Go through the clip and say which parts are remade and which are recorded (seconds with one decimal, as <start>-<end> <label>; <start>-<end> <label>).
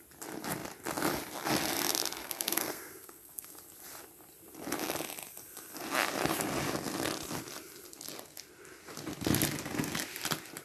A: 0.0-2.2 recorded; 2.2-3.6 remade; 3.6-10.6 recorded